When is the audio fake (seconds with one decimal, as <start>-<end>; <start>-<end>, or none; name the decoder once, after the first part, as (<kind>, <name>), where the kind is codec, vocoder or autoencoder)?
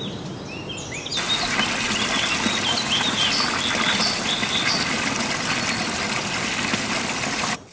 none